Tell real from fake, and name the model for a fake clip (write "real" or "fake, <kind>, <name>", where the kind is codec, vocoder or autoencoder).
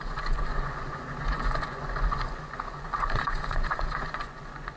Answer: fake, vocoder, Vocos